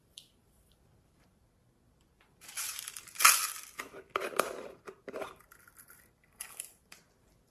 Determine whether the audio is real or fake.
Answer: fake